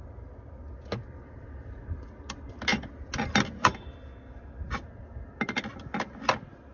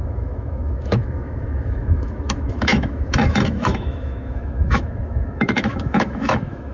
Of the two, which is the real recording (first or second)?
first